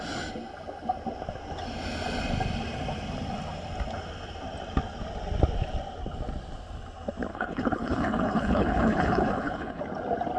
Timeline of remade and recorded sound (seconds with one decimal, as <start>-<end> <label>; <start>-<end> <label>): 0.0-7.3 recorded; 7.3-9.8 remade; 9.8-10.4 recorded